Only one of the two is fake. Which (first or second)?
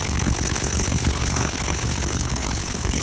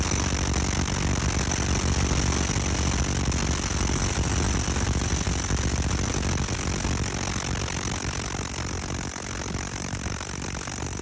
first